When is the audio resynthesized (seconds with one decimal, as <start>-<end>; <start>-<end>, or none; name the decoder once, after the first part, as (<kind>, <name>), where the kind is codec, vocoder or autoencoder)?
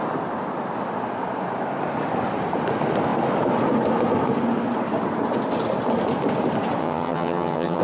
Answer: 6.8-7.8 (vocoder, HiFi-GAN)